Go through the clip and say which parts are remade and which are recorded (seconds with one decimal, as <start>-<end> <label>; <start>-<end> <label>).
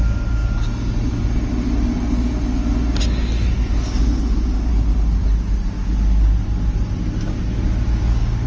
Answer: 0.0-8.5 recorded